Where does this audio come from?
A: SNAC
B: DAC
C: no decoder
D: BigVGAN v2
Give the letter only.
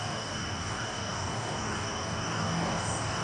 B